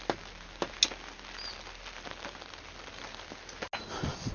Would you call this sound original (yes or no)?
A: yes